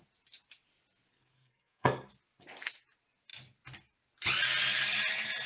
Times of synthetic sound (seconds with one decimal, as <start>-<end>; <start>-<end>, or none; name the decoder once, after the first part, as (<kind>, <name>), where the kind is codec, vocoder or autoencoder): 1.1-2.1 (codec, SNAC)